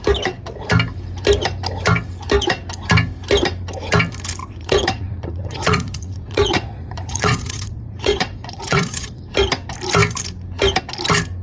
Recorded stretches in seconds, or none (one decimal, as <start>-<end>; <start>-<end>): 0.0-4.4; 9.2-11.4